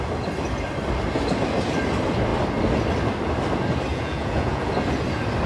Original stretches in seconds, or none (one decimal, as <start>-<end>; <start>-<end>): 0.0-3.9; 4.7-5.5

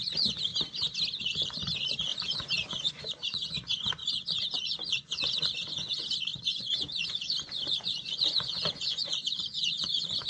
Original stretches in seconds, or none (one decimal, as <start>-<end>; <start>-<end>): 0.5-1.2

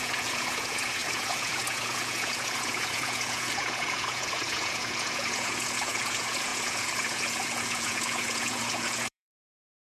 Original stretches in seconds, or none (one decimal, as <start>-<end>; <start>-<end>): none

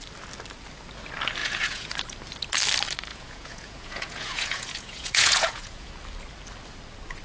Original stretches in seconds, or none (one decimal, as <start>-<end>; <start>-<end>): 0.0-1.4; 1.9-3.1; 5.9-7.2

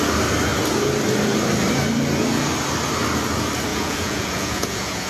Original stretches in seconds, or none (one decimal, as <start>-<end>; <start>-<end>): 0.0-3.7

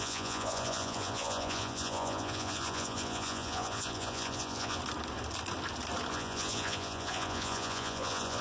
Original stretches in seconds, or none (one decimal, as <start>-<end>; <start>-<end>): 4.8-6.1

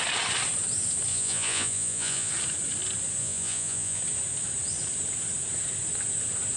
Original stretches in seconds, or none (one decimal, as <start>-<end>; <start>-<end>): 0.0-1.1; 2.3-3.2; 4.0-6.6